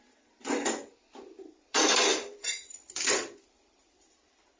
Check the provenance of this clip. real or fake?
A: fake